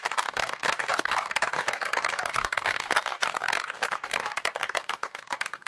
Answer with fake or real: fake